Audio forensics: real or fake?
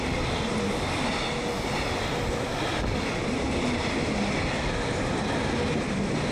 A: real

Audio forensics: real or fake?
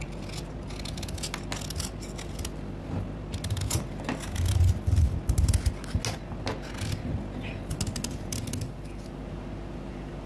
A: real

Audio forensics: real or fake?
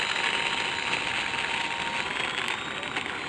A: real